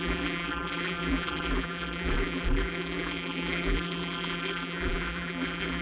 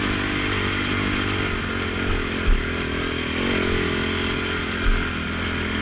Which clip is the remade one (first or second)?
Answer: first